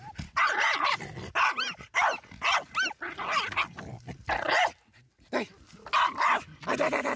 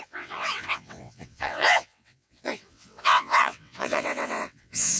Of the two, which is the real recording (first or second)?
first